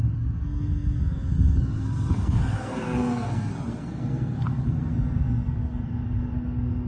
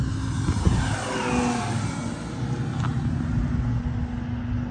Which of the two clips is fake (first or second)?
first